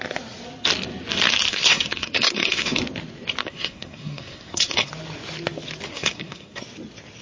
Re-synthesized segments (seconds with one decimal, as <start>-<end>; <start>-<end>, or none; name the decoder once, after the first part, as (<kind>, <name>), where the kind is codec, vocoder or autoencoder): 1.5-2.8 (codec, SNAC); 3.4-4.9; 5.9-6.6